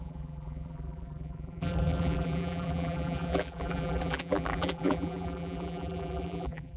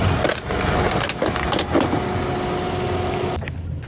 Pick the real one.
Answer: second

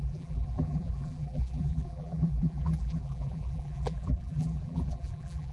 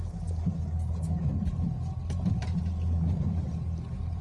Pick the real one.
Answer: second